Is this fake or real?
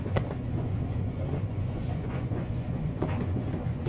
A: fake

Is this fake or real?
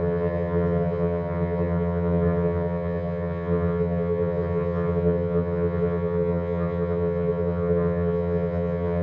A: fake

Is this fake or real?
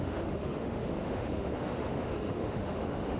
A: fake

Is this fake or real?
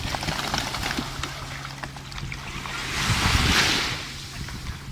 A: real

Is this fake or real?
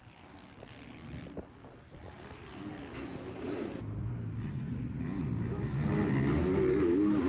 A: real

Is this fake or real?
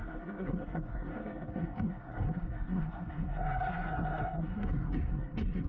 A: fake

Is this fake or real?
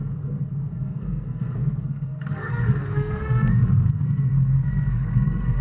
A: fake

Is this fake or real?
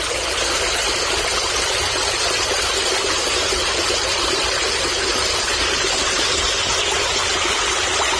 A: real